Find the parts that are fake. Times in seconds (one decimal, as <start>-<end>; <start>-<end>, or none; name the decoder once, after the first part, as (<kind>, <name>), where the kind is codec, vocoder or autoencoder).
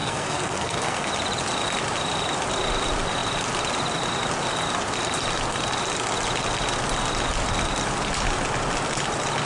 0.0-1.1 (codec, SNAC)